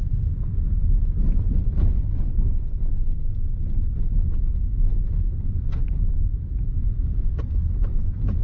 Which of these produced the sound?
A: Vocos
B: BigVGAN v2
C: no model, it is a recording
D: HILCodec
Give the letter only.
C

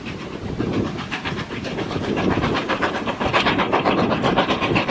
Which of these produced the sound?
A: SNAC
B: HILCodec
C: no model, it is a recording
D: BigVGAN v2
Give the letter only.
D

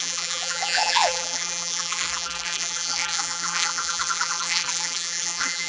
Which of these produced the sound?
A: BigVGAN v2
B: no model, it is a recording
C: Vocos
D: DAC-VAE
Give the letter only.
A